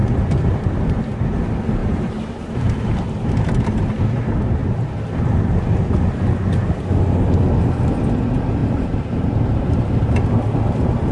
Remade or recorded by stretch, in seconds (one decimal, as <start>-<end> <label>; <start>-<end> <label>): 0.0-0.8 remade; 0.8-1.8 recorded; 1.8-3.3 remade; 3.3-4.6 recorded; 4.6-6.1 remade; 6.1-8.6 recorded; 8.6-10.1 remade; 10.1-11.1 recorded